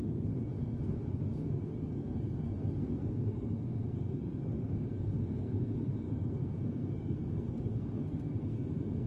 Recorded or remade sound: remade